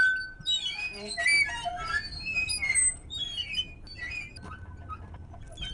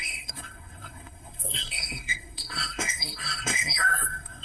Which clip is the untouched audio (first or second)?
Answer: first